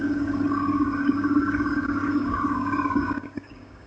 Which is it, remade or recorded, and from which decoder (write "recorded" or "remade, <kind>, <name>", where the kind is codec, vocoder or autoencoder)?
remade, codec, DAC